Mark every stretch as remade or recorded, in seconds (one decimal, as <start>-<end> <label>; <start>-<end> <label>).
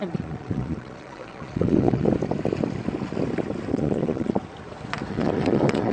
0.0-2.1 remade; 2.1-3.7 recorded; 3.7-4.4 remade; 4.4-5.1 recorded; 5.1-5.9 remade